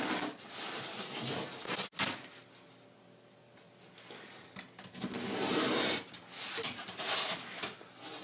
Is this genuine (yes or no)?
yes